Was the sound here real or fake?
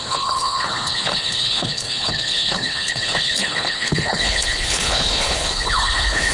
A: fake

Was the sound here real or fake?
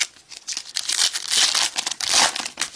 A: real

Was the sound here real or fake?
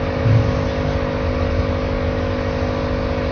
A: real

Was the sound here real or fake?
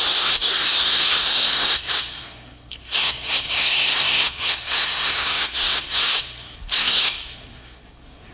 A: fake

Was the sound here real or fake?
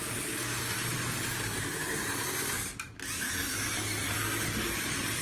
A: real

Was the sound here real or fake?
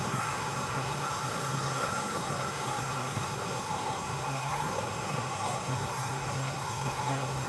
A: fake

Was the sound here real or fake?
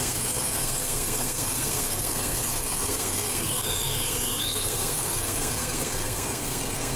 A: fake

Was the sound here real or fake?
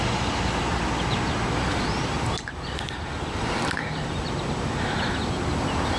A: real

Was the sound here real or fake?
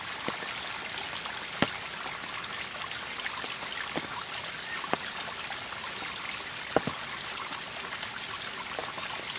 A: real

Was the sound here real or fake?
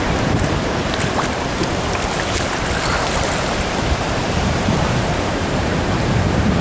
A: fake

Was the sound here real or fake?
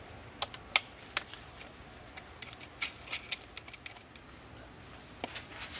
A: real